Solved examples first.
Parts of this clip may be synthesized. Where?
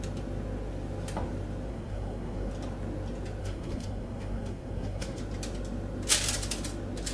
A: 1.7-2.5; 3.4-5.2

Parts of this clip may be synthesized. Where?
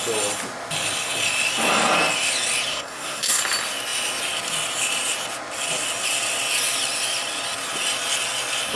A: 2.7-3.4